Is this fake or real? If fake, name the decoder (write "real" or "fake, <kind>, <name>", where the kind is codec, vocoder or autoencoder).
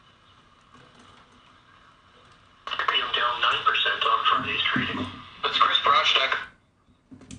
real